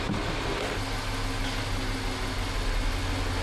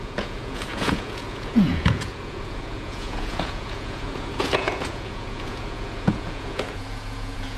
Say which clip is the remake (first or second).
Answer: second